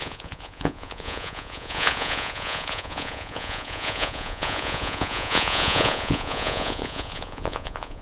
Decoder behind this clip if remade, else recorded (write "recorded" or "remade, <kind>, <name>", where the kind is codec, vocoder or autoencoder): remade, vocoder, Vocos